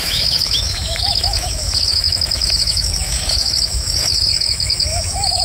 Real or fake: fake